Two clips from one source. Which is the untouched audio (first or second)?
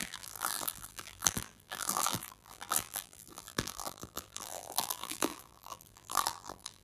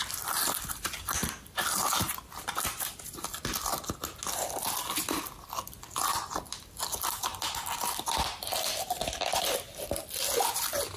second